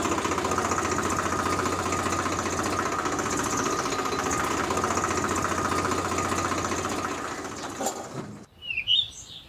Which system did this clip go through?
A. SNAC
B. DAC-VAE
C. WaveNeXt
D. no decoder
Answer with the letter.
D